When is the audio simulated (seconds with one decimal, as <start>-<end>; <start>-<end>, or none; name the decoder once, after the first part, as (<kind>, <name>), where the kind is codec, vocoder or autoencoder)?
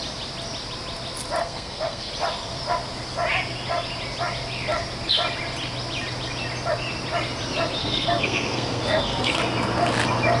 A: 1.4-2.1 (codec, SNAC); 7.8-9.4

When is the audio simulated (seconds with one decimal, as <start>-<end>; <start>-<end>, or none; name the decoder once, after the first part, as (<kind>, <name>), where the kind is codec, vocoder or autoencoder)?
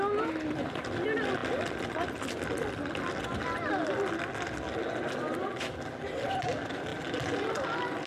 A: none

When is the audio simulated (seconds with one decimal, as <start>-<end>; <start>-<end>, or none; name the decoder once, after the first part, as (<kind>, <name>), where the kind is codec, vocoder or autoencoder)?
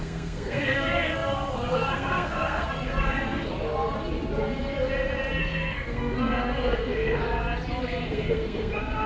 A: 0.0-3.5 (codec, SNAC); 5.4-7.2; 7.8-9.1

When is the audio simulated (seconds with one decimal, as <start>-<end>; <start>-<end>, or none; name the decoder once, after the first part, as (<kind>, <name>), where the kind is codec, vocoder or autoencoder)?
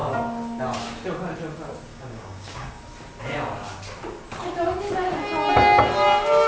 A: 1.9-2.8 (codec, DAC)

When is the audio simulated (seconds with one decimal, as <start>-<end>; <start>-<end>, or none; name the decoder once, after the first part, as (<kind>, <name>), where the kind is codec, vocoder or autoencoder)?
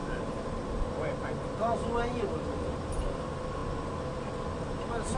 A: none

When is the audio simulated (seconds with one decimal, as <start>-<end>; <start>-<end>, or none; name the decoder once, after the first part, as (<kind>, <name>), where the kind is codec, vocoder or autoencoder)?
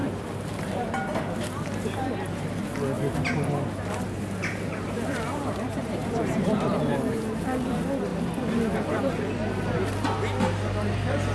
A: 0.0-0.9 (vocoder, BigVGAN v2); 4.4-7.4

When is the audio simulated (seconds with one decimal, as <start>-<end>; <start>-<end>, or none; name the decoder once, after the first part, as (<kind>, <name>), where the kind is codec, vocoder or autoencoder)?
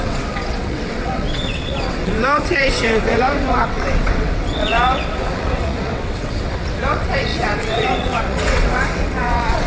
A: 0.0-9.7 (vocoder, WaveNeXt)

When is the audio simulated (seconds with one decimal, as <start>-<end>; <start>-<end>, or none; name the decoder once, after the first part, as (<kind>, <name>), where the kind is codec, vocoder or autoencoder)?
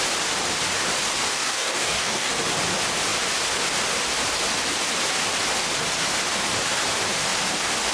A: 1.3-2.3 (codec, DAC)